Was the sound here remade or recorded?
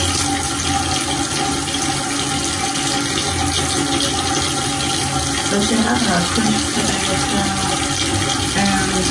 recorded